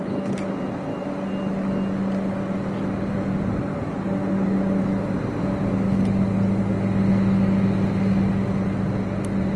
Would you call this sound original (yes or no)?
yes